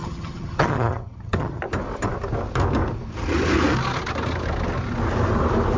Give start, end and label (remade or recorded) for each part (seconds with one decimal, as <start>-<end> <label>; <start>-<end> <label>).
0.0-1.6 remade; 1.6-5.8 recorded